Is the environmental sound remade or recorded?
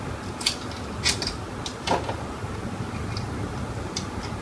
recorded